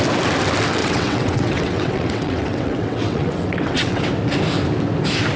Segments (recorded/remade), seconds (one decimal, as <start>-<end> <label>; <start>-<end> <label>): 0.0-0.8 recorded; 0.8-4.0 remade; 4.0-5.4 recorded